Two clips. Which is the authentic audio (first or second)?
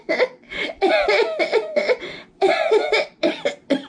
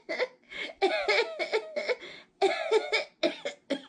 second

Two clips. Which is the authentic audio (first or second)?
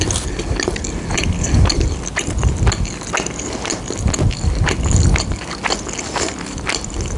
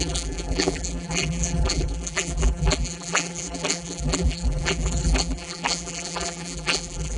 first